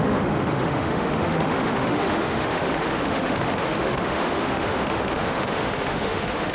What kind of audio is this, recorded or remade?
remade